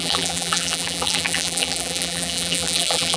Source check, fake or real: fake